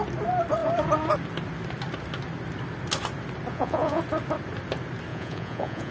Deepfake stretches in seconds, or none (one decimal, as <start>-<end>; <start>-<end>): 3.5-4.0; 5.1-5.9